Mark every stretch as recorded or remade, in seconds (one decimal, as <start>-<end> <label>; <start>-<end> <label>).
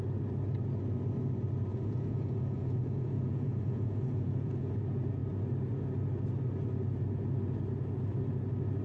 0.0-1.7 recorded; 1.7-4.7 remade; 4.7-8.8 recorded